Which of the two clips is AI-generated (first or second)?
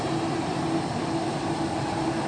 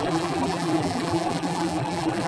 second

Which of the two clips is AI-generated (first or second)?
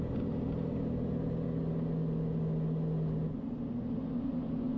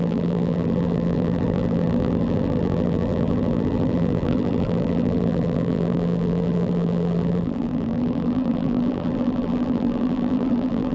second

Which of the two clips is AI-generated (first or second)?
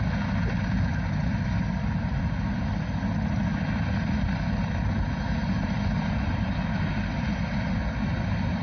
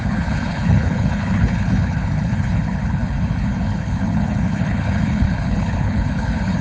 second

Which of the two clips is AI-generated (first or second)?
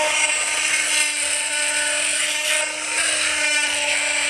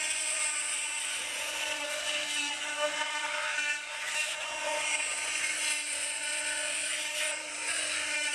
second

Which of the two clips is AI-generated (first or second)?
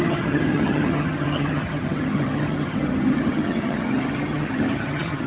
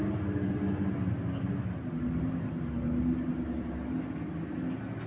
first